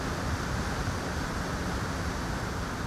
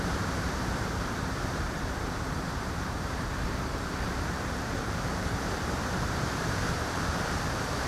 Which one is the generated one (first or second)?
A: second